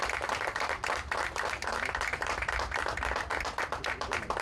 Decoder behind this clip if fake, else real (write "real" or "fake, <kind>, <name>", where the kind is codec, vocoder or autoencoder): fake, vocoder, BigVGAN v2